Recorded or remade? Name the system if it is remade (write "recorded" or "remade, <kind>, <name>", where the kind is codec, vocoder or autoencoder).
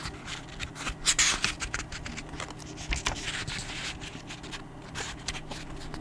recorded